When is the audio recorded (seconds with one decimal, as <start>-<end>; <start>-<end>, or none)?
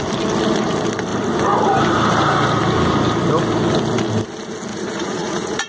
0.0-4.7